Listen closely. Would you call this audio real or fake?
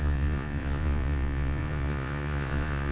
fake